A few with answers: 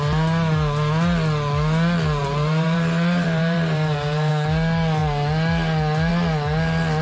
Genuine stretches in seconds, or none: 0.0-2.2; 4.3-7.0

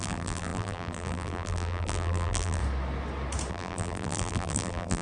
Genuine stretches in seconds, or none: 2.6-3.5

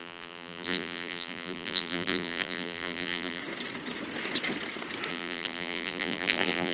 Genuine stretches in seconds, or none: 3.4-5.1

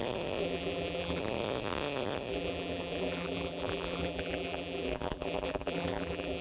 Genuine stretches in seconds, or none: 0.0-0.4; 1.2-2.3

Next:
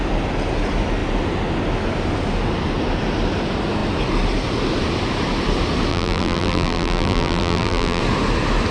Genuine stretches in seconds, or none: 0.0-5.9; 8.0-8.7

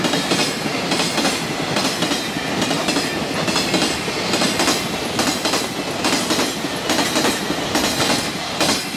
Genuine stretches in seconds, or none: 0.0-0.4; 1.2-9.0

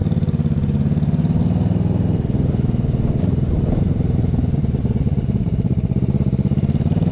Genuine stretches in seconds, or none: 0.0-3.2